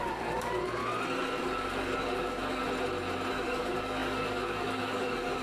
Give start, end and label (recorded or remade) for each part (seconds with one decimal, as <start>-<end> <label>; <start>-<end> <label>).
0.0-0.8 remade; 0.8-1.4 recorded; 1.4-2.6 remade; 2.6-3.3 recorded; 3.3-5.4 remade